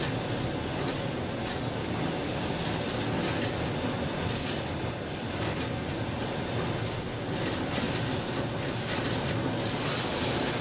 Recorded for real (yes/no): yes